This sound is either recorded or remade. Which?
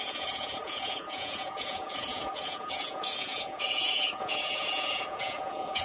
remade